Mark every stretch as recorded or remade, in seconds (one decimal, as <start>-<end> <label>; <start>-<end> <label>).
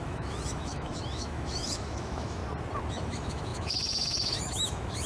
0.0-2.4 remade; 2.4-2.9 recorded; 2.9-5.1 remade